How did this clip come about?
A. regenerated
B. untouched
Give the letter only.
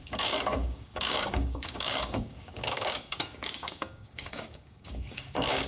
A